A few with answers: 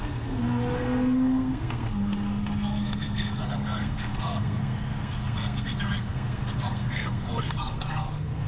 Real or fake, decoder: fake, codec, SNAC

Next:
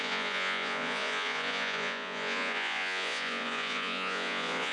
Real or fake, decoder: fake, vocoder, Vocos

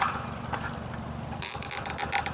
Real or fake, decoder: real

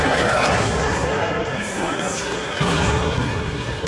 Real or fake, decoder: fake, codec, SNAC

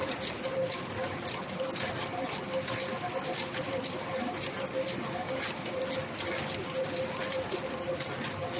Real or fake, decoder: real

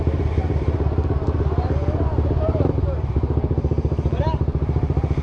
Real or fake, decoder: real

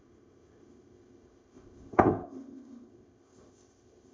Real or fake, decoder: fake, codec, ZipCodec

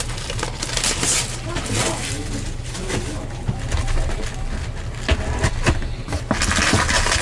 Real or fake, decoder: real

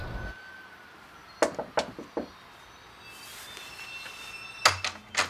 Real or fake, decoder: real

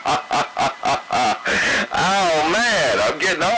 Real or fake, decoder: real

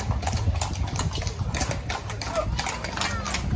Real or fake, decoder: real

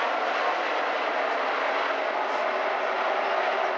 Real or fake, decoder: real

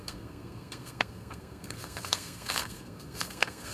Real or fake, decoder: fake, codec, SNAC